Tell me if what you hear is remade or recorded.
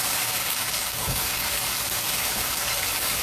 remade